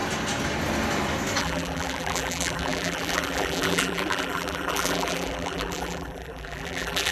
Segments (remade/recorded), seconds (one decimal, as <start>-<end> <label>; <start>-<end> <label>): 0.0-1.4 recorded; 1.4-7.1 remade